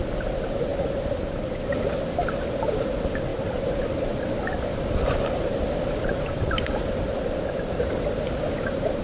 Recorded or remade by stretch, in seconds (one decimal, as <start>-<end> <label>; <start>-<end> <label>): 0.0-3.3 recorded; 3.3-4.0 remade; 4.0-9.0 recorded